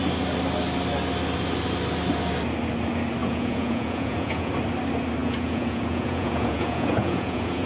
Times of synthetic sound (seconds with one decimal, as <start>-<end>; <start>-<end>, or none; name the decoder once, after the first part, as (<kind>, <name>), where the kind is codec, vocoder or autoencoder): 3.2-4.5 (vocoder, Vocos); 5.2-7.7